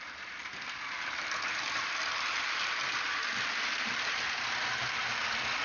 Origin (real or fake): real